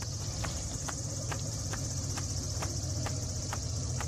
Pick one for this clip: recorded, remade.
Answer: remade